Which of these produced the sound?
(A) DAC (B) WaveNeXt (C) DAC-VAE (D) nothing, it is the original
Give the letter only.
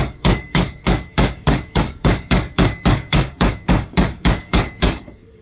A